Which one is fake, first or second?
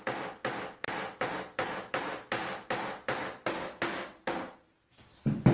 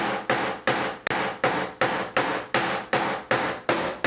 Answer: first